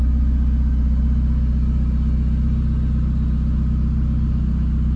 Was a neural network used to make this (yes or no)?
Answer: no